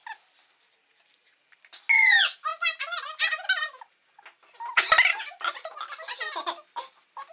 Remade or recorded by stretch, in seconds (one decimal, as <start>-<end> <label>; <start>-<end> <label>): 0.0-7.3 recorded